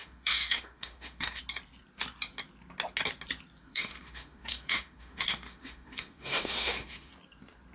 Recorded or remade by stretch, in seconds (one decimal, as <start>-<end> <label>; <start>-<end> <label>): 0.0-1.4 remade; 1.4-3.6 recorded; 3.6-7.1 remade; 7.1-7.7 recorded